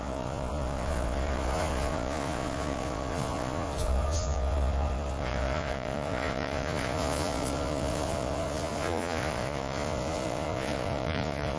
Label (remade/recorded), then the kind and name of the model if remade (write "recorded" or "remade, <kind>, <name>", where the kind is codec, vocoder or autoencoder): remade, vocoder, Vocos